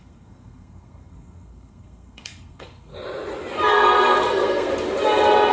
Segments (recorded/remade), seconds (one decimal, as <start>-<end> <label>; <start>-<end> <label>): 0.0-2.9 remade; 2.9-3.7 recorded; 3.7-4.7 remade; 4.7-5.5 recorded